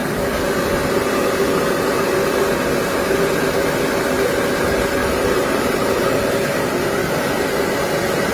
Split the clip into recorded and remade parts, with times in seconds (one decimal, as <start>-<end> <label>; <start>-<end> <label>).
0.0-5.0 recorded; 5.0-6.2 remade; 6.2-8.3 recorded